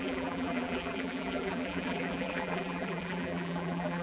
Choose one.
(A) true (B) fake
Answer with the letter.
B